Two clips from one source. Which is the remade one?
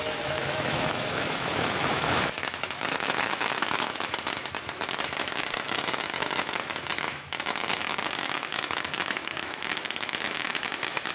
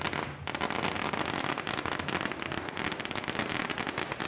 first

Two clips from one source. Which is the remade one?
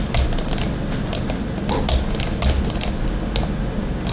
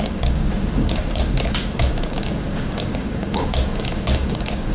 second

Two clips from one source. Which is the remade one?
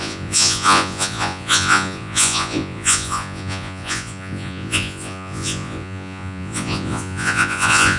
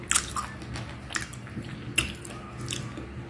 first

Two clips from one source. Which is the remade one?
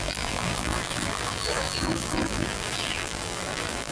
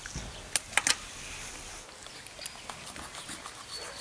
first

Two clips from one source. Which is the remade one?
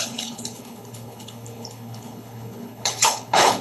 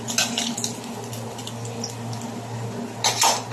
first